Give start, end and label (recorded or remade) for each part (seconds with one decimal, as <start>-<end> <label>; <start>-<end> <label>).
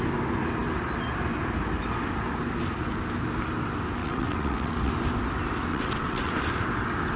0.0-4.0 recorded; 4.0-4.9 remade; 4.9-5.7 recorded; 5.7-6.3 remade; 6.3-7.2 recorded